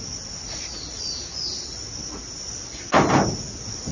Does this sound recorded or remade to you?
recorded